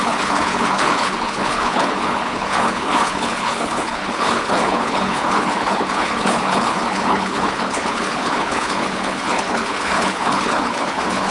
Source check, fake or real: fake